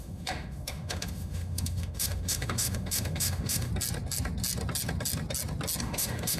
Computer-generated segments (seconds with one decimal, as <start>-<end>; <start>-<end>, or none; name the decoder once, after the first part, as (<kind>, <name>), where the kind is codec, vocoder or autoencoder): 0.0-3.7 (autoencoder, DAC-VAE); 5.8-6.4